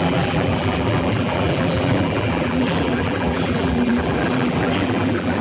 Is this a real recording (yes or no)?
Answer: no